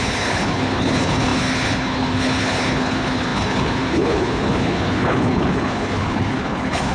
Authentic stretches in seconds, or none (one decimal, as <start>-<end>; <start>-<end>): none